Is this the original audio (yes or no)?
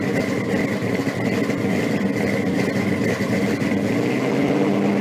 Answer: yes